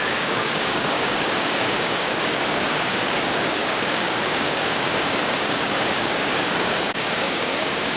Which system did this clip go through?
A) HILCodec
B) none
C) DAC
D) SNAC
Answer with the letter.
C